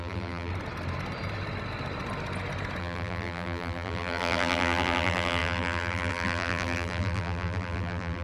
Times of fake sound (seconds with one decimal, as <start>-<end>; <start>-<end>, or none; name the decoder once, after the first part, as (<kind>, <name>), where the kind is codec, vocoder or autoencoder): 0.0-0.5 (vocoder, BigVGAN v2); 2.8-8.2